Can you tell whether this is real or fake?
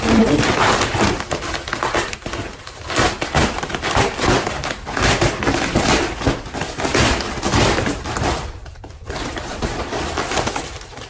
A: fake